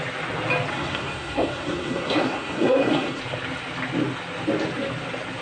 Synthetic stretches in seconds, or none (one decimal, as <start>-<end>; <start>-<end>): 0.7-3.2